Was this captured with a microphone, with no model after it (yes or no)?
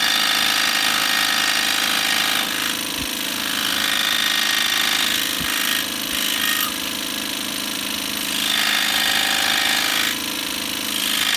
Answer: yes